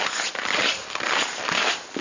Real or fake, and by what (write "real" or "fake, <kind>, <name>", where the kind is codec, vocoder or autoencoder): real